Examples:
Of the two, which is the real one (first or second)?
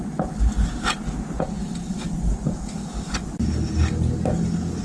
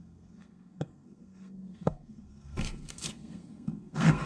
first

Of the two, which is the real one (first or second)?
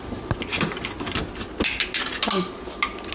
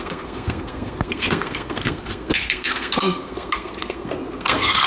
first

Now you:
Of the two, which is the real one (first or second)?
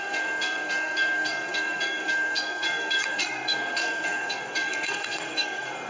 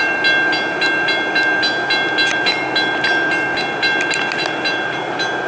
second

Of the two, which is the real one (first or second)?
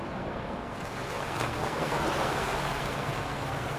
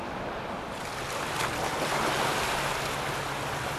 second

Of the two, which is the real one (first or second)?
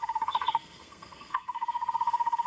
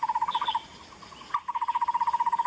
second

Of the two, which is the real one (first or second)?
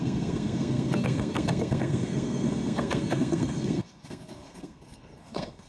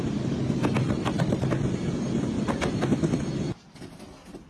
second